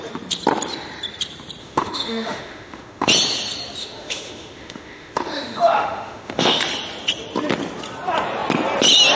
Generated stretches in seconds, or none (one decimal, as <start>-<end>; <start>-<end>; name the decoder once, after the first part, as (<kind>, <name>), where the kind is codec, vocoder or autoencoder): 1.6-3.1 (autoencoder, DAC-VAE); 3.8-6.6